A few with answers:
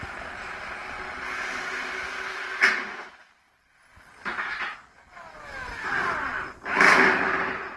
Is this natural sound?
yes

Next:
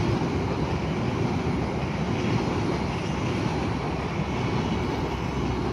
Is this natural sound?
yes